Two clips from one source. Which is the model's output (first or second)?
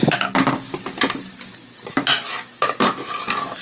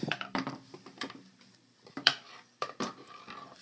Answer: second